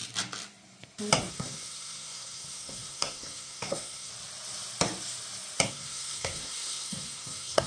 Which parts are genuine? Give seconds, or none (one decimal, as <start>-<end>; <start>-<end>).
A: 0.0-1.3; 4.1-5.7